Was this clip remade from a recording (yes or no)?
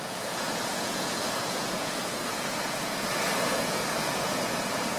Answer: yes